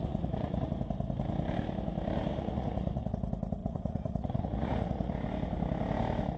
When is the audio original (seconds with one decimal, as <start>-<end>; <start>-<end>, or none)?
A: 0.7-2.3; 3.1-3.6; 5.1-6.4